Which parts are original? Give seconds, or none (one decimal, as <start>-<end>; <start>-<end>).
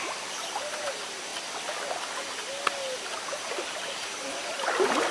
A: 1.3-3.7